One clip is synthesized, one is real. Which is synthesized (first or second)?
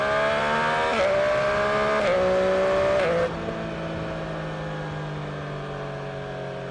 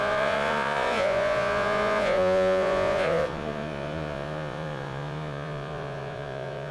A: second